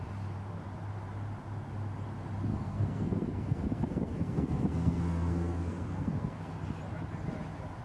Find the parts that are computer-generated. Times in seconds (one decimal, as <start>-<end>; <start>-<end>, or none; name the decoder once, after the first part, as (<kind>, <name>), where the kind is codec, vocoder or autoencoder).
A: 2.5-6.5 (codec, SNAC)